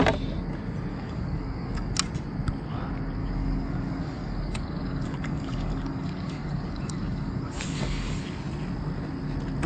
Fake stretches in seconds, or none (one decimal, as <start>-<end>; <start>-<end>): 0.9-1.9; 3.2-8.2